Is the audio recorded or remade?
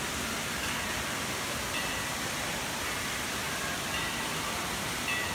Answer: remade